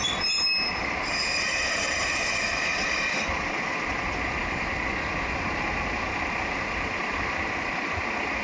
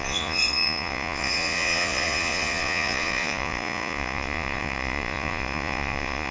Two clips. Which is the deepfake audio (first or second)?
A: second